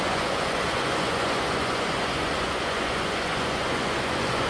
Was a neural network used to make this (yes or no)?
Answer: yes